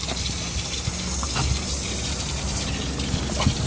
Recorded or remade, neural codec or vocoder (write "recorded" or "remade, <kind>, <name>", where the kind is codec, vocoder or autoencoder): recorded